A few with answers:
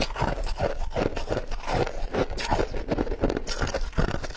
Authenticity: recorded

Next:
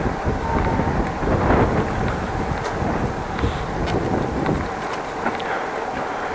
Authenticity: recorded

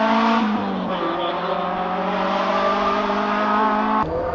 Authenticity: recorded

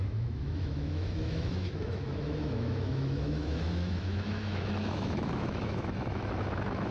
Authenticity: remade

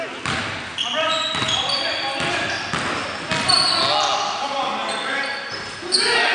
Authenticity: recorded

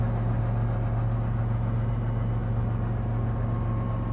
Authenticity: recorded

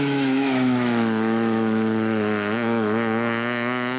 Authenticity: remade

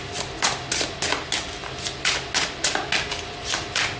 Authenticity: recorded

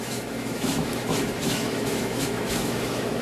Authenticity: remade